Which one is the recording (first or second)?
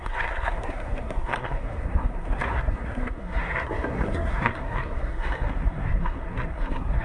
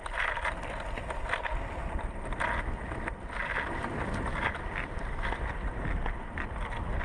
second